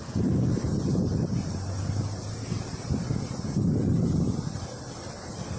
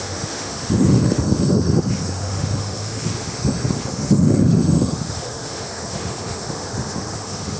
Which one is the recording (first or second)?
first